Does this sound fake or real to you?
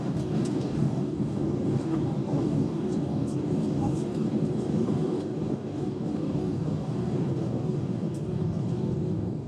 fake